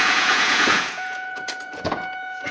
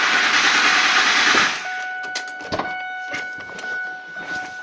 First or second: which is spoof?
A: first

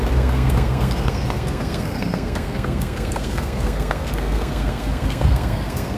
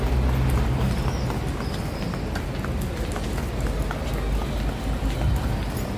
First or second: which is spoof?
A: first